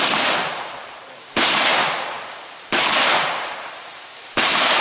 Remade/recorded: remade